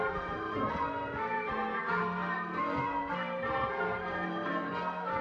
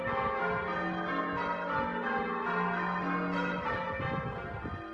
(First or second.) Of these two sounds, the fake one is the first